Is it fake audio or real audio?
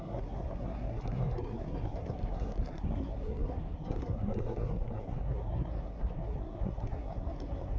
fake